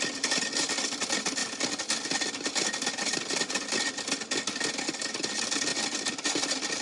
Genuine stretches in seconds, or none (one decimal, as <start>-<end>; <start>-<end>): 0.0-6.8